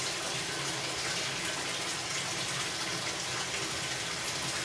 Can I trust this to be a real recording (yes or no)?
yes